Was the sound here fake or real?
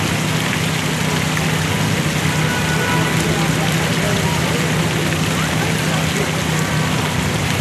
real